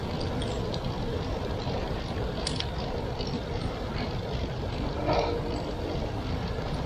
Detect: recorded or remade recorded